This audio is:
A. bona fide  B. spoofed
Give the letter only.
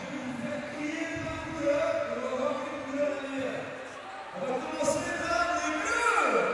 A